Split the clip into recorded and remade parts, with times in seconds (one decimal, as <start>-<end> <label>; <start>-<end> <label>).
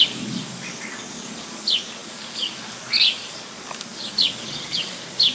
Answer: 0.0-5.3 remade